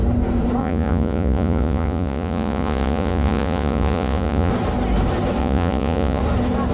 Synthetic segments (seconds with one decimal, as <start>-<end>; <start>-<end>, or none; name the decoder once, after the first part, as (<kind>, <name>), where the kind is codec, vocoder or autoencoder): 0.6-4.5 (vocoder, Vocos); 5.4-6.2